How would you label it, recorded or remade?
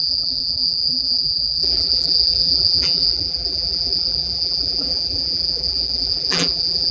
remade